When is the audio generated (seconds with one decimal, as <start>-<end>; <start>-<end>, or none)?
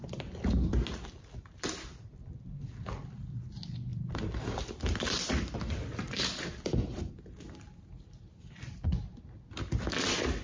3.9-7.1